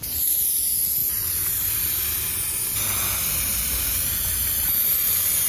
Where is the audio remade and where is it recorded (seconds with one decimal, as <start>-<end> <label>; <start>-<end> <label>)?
0.0-5.5 recorded